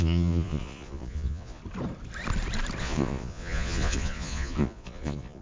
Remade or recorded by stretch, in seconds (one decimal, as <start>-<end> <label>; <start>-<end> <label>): 0.0-1.6 remade; 1.6-2.8 recorded; 2.8-5.4 remade

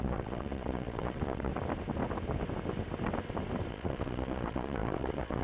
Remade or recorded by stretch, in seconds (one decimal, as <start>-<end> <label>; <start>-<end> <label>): 0.0-1.5 remade; 1.5-3.7 recorded; 3.7-5.4 remade